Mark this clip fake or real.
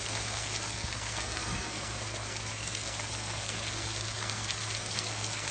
fake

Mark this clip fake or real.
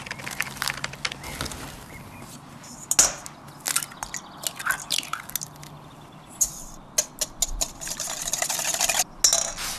real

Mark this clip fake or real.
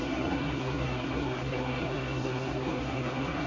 fake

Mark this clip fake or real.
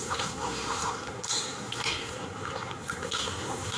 fake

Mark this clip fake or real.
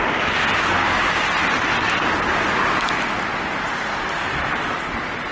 real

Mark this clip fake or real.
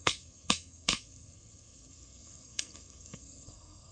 fake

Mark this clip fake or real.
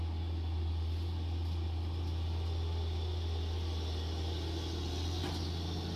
real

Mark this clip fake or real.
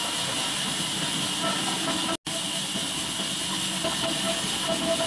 real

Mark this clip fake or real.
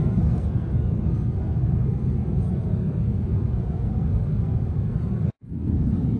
fake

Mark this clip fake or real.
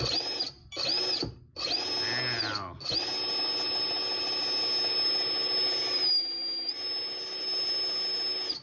real